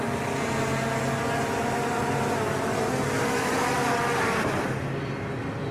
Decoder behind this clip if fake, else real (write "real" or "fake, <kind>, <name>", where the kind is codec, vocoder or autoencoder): real